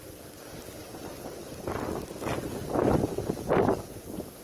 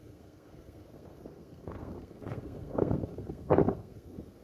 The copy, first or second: second